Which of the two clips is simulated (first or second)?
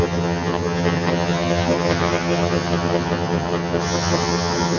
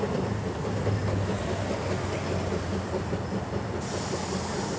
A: first